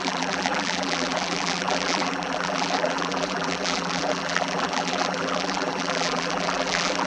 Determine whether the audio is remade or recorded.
remade